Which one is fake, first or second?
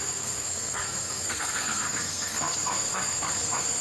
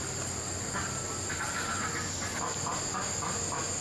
first